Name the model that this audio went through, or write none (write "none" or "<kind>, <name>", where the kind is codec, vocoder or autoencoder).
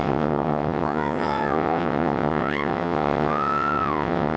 vocoder, WaveNeXt